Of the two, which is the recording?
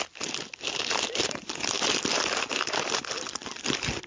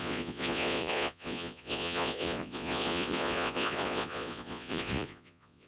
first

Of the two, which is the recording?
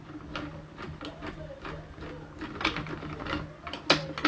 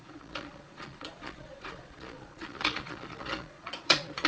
first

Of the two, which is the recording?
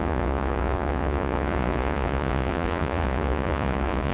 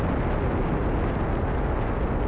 second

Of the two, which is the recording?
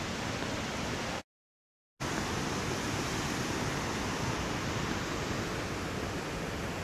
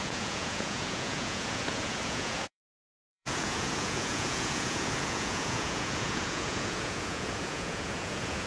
first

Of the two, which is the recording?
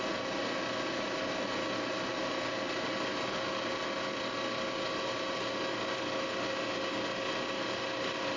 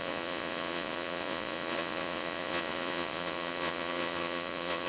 first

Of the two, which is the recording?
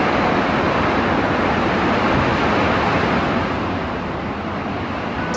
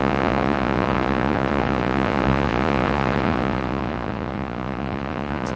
first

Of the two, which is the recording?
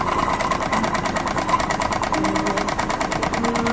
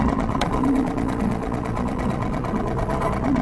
first